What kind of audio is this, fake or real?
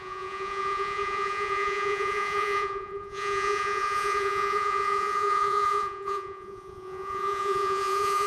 fake